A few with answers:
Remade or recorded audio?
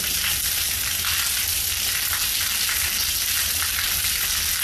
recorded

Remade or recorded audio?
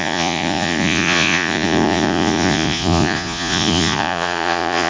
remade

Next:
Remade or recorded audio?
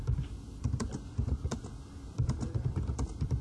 remade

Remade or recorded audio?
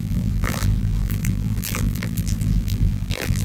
remade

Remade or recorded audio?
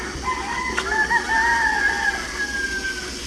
recorded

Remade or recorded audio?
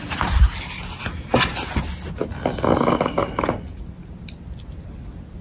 recorded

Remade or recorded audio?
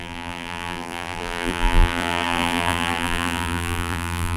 remade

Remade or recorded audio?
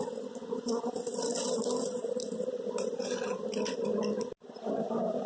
recorded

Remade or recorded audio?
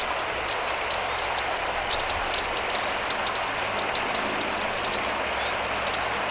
recorded